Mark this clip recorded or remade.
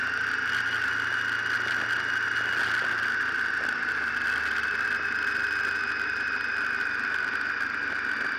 recorded